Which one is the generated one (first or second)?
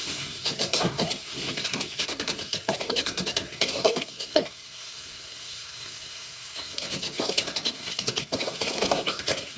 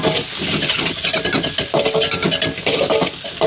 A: first